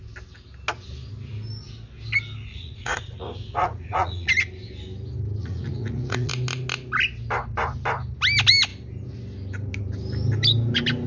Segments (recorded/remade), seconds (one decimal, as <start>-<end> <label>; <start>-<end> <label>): 0.0-2.5 recorded; 2.5-4.3 remade; 4.3-5.4 recorded; 5.4-6.3 remade; 6.3-11.1 recorded